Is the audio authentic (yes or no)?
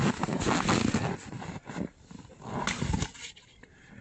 yes